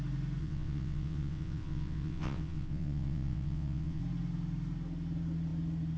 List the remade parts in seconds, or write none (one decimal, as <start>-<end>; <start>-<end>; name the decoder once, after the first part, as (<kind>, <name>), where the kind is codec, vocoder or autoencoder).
0.4-4.0 (vocoder, WaveNeXt)